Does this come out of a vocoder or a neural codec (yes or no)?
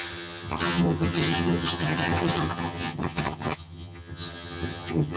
yes